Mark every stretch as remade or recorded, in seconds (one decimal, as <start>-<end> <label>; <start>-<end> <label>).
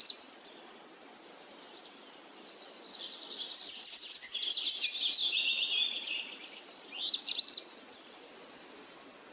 0.0-5.2 recorded; 5.2-7.1 remade; 7.1-9.3 recorded